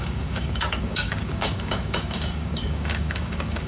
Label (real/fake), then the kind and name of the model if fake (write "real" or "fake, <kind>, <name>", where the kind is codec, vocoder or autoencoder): fake, codec, DAC